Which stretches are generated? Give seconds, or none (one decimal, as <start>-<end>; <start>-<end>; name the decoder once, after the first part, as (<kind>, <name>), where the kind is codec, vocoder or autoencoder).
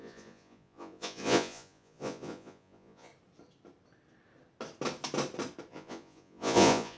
0.0-3.1 (vocoder, Vocos); 5.7-7.0